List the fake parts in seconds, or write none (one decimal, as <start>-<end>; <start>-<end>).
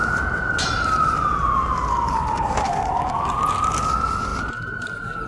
1.9-3.4